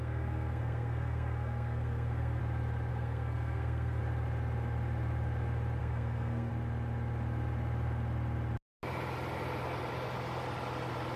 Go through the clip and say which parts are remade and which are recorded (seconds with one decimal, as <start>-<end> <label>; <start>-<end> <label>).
0.0-2.4 remade; 2.4-2.9 recorded; 2.9-4.0 remade; 4.0-5.8 recorded; 5.8-6.5 remade; 6.5-11.2 recorded